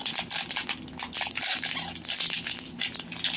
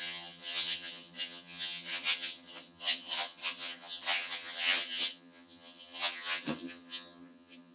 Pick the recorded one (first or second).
first